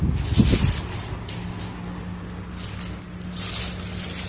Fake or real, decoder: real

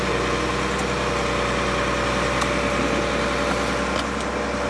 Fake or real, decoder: real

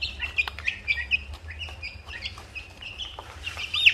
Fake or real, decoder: fake, vocoder, BigVGAN v2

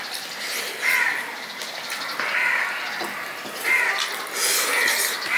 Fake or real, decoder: real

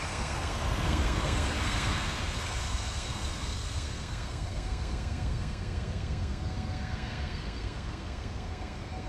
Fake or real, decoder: fake, codec, SNAC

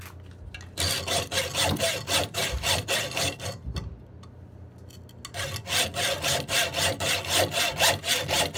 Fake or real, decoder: real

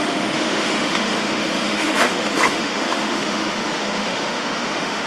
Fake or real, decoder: fake, autoencoder, DAC-VAE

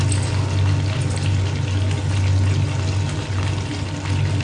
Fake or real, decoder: real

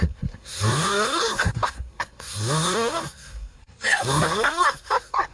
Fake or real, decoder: fake, codec, SNAC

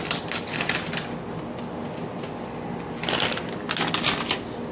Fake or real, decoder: real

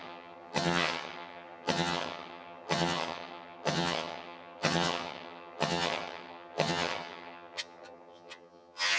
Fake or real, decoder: fake, vocoder, HiFi-GAN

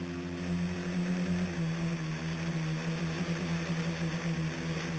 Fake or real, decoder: real